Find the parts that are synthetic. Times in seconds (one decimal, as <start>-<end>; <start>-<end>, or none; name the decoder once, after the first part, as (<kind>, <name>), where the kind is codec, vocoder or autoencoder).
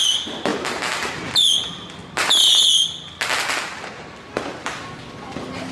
0.0-2.0 (vocoder, BigVGAN v2); 3.5-5.7